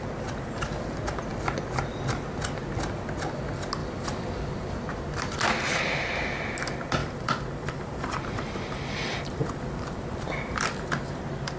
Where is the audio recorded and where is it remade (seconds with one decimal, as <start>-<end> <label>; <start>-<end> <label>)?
0.0-3.8 recorded; 3.8-4.8 remade; 4.8-7.0 recorded; 7.0-11.2 remade; 11.2-11.6 recorded